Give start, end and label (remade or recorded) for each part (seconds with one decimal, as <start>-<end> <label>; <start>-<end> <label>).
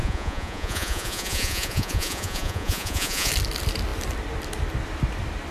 0.0-3.3 remade; 3.3-5.5 recorded